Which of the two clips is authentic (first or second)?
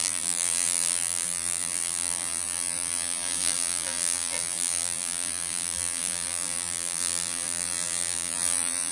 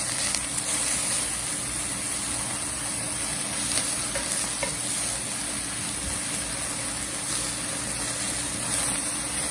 second